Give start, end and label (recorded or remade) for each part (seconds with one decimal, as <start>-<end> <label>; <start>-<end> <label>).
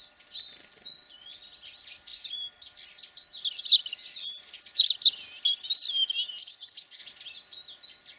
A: 0.0-6.4 recorded; 6.4-7.0 remade; 7.0-8.2 recorded